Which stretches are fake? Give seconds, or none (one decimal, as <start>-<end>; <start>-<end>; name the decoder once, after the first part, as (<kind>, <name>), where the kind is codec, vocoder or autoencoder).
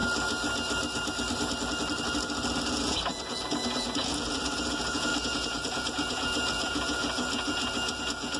2.7-8.4 (vocoder, Vocos)